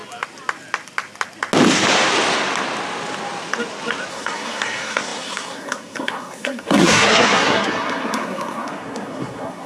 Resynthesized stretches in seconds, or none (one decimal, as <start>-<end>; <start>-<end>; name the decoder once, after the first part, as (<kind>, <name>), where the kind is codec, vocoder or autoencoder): 4.1-9.7 (codec, SNAC)